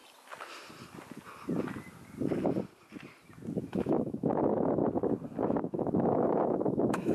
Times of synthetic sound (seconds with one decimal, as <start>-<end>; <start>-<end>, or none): 3.6-4.8; 5.4-7.1